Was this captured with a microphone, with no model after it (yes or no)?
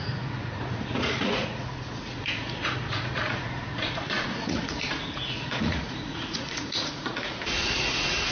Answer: no